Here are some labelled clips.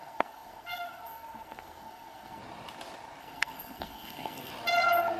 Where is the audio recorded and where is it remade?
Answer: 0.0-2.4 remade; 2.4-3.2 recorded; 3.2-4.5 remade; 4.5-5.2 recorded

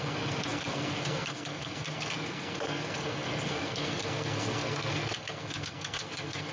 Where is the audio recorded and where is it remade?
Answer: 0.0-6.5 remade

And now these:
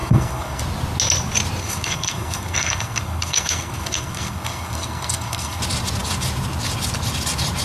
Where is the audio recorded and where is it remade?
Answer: 0.0-0.6 remade; 0.6-1.6 recorded; 1.6-5.6 remade; 5.6-7.6 recorded